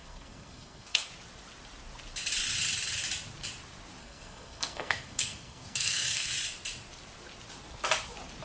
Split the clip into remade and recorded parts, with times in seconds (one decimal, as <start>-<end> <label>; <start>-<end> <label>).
0.0-1.1 remade; 1.1-4.0 recorded; 4.0-6.3 remade; 6.3-8.4 recorded